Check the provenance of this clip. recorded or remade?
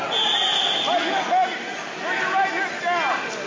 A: recorded